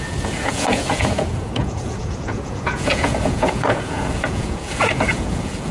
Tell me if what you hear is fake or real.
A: fake